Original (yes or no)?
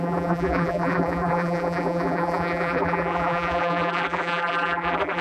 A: no